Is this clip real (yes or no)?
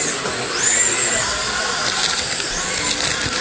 yes